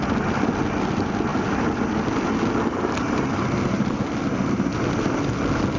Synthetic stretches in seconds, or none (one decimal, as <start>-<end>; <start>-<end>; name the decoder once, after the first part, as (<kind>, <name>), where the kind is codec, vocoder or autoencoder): none